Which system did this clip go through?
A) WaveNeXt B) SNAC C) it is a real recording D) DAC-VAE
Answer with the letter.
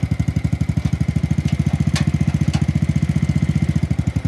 C